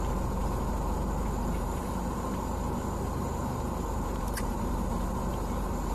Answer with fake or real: fake